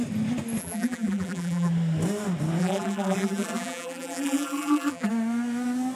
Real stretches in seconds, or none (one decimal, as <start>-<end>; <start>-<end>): 0.0-0.6; 1.7-2.6; 5.1-6.0